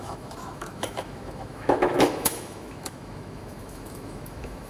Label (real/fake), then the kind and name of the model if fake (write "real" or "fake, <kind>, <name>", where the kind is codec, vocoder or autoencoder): fake, autoencoder, DAC-VAE